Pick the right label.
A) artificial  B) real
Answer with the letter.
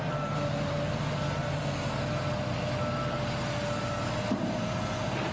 B